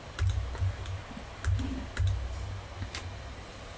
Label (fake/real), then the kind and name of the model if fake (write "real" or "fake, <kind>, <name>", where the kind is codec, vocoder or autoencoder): real